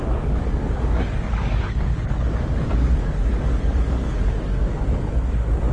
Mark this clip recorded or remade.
remade